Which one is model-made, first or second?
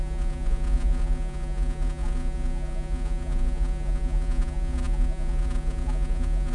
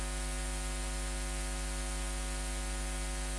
first